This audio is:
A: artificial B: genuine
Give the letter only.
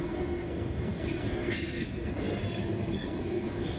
A